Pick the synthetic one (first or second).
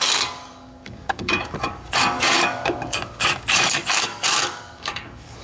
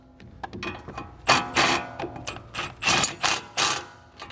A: first